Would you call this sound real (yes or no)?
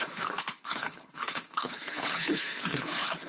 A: no